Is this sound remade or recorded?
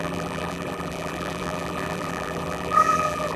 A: remade